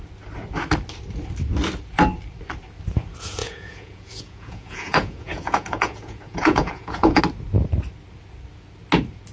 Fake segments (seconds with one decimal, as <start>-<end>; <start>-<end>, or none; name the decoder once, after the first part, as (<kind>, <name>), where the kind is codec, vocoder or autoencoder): 3.4-7.2 (vocoder, Vocos)